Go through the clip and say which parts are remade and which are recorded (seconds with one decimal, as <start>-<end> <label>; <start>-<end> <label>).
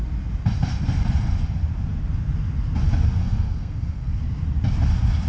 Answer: 0.0-3.2 recorded; 3.2-4.2 remade; 4.2-5.3 recorded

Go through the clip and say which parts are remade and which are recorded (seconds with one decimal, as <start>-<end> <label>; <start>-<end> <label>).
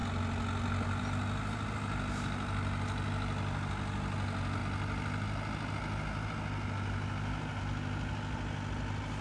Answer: 0.0-9.2 recorded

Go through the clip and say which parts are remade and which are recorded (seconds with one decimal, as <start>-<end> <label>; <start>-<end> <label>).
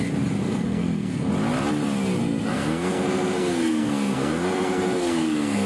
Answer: 0.0-0.4 recorded; 0.4-1.3 remade; 1.3-2.2 recorded; 2.2-5.7 remade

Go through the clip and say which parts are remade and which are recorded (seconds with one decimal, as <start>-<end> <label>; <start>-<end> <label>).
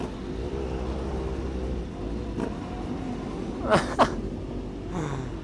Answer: 0.0-5.4 recorded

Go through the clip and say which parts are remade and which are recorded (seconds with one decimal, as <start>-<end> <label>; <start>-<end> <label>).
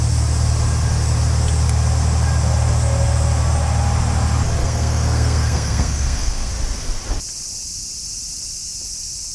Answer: 0.0-4.6 recorded; 4.6-6.5 remade; 6.5-9.3 recorded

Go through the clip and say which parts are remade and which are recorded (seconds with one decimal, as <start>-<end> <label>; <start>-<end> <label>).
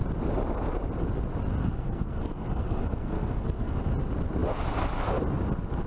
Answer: 0.0-1.6 recorded; 1.6-3.8 remade; 3.8-5.9 recorded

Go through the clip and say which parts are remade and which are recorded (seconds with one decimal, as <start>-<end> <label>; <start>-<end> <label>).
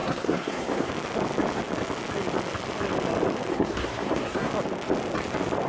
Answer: 0.0-0.9 remade; 0.9-3.5 recorded; 3.5-4.5 remade; 4.5-5.7 recorded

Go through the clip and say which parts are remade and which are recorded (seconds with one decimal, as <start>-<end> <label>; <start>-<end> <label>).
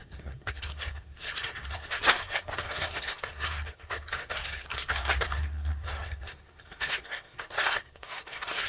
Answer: 0.0-8.7 remade